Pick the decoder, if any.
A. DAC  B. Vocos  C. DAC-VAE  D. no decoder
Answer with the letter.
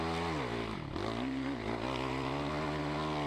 D